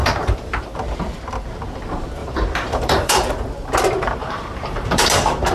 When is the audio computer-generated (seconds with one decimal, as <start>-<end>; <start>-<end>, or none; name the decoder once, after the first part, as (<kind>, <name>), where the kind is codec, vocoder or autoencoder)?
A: 0.0-0.6 (vocoder, BigVGAN v2); 2.2-3.3; 4.2-5.5